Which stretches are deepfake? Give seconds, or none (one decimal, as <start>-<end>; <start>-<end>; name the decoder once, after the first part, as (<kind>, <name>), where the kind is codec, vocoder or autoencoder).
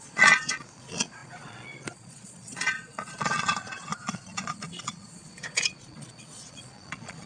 0.0-7.3 (vocoder, Vocos)